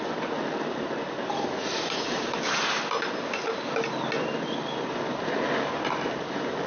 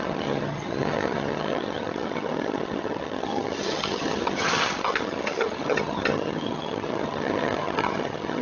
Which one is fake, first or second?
second